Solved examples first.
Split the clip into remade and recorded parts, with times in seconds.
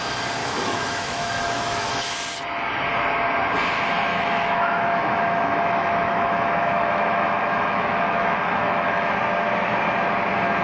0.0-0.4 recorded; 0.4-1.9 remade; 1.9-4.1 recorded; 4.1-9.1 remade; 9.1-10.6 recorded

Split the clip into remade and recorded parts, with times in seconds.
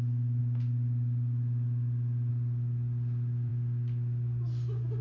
0.0-5.0 recorded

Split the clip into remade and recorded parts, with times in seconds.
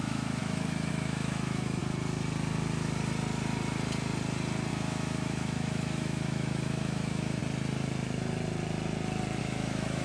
0.0-1.8 remade; 1.8-4.7 recorded; 4.7-7.4 remade; 7.4-9.4 recorded; 9.4-10.0 remade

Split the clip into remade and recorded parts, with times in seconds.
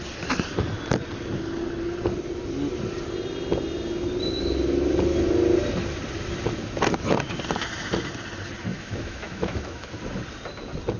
0.0-8.7 recorded; 8.7-10.0 remade; 10.0-11.0 recorded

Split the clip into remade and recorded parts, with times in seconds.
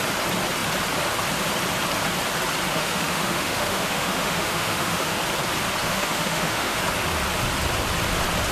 0.0-2.7 recorded; 2.7-5.2 remade; 5.2-5.8 recorded; 5.8-6.8 remade; 6.8-8.5 recorded